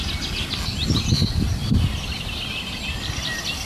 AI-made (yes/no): no